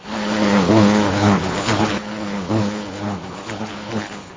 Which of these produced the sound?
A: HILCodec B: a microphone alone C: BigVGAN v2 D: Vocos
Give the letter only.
A